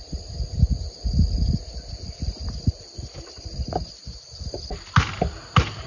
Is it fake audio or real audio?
real